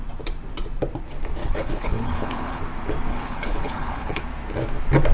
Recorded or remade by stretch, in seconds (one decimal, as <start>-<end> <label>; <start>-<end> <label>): 0.0-1.4 recorded; 1.4-2.6 remade; 2.6-3.1 recorded; 3.1-4.2 remade; 4.2-5.1 recorded

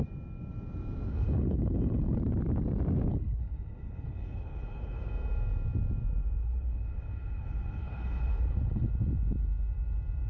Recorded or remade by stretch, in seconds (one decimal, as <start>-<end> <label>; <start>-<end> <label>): 0.0-1.1 recorded; 1.1-2.2 remade; 2.2-3.1 recorded; 3.1-5.1 remade; 5.1-6.4 recorded; 6.4-8.9 remade; 8.9-10.3 recorded